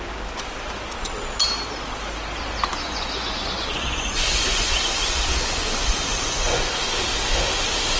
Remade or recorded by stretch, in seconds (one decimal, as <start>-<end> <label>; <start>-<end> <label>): 0.0-2.7 recorded; 2.7-6.6 remade; 6.6-8.0 recorded